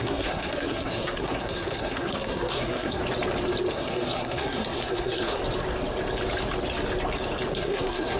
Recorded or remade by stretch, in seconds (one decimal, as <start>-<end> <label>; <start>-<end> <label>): 0.0-3.0 remade; 3.0-3.7 recorded; 3.7-5.4 remade; 5.4-7.5 recorded; 7.5-8.2 remade